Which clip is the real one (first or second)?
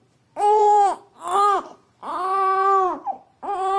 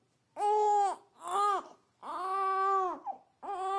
second